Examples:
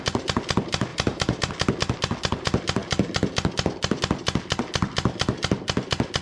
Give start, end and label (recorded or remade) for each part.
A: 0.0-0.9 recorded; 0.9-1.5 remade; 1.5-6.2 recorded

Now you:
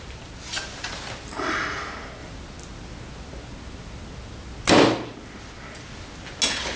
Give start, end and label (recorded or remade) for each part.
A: 0.0-6.8 recorded

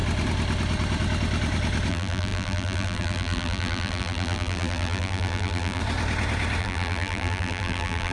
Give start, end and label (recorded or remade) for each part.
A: 0.0-1.9 recorded; 1.9-5.8 remade; 5.8-6.6 recorded; 6.6-8.1 remade

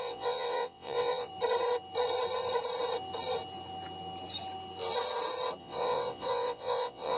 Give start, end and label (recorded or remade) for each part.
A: 0.0-1.3 remade; 1.3-5.6 recorded; 5.6-7.2 remade